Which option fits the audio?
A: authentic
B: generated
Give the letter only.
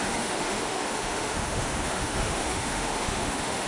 B